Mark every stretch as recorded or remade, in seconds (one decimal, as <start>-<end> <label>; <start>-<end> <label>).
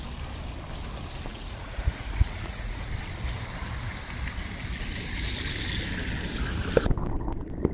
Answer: 0.0-1.3 recorded; 1.3-2.9 remade; 2.9-7.7 recorded